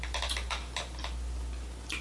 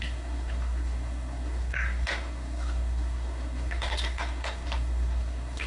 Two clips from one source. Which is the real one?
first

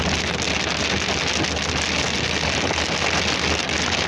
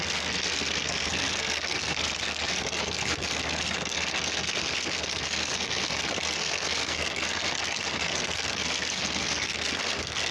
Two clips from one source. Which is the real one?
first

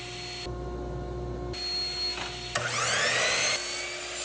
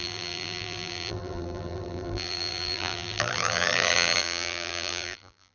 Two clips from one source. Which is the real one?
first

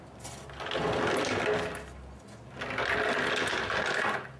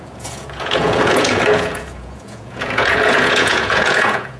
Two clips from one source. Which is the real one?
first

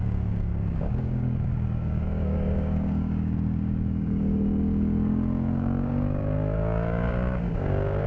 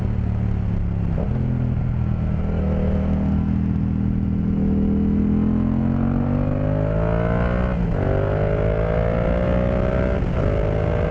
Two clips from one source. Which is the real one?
second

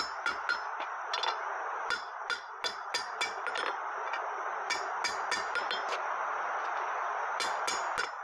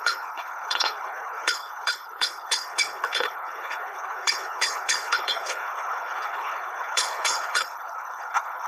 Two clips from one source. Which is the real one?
first